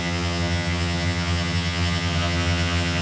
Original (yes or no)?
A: no